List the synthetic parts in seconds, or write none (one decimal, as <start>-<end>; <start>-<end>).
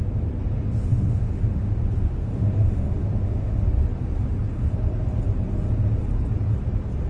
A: 0.9-3.6